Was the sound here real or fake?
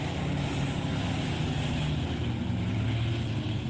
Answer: real